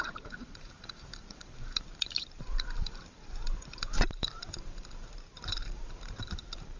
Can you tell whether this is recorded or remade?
remade